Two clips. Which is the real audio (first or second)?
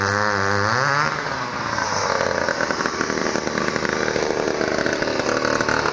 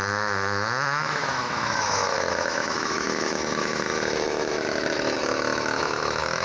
first